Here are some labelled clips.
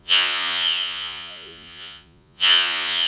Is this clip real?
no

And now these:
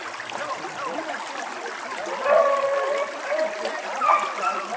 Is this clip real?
yes